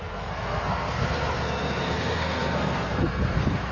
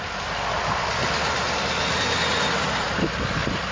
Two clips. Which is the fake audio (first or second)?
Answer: first